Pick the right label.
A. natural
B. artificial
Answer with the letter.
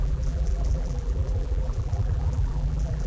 B